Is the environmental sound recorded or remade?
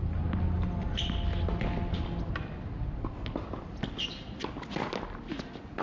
recorded